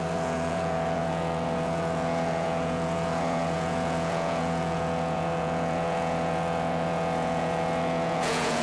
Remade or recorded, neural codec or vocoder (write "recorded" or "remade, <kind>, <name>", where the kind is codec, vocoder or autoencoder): remade, vocoder, Vocos